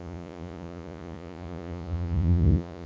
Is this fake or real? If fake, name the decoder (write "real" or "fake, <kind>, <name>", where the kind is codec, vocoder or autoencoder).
fake, vocoder, Vocos